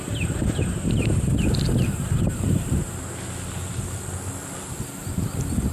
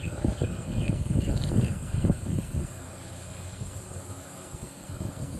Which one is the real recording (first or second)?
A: first